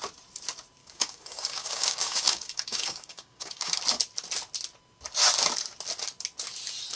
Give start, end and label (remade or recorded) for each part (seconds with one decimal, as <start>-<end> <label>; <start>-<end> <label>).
0.0-0.8 recorded; 0.8-3.8 remade; 3.8-7.0 recorded